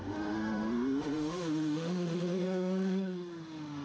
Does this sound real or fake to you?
fake